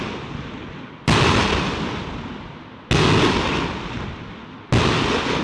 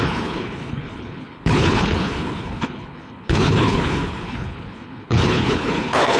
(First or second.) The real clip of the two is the first